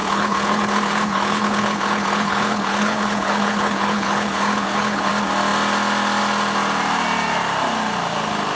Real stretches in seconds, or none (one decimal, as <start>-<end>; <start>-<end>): 5.1-8.5